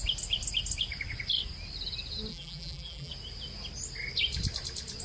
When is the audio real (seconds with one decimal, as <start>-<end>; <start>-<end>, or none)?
0.0-2.3; 3.1-5.0

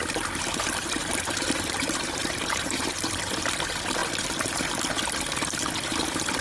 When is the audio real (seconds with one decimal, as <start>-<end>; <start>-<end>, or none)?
2.9-6.4

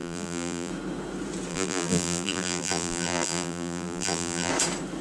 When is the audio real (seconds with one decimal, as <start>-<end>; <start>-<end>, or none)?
0.7-1.5; 4.5-5.0

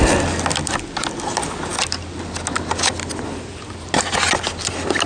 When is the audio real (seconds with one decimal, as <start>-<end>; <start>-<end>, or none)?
0.0-5.1

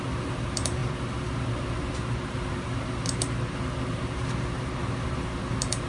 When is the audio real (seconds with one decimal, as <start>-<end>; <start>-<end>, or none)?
0.8-1.3

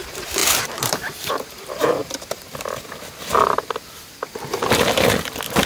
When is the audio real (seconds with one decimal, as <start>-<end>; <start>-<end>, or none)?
2.0-5.7